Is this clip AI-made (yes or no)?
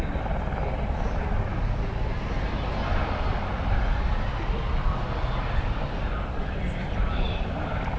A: no